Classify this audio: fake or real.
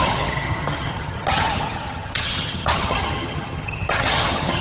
fake